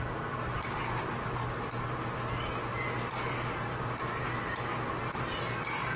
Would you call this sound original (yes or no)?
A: yes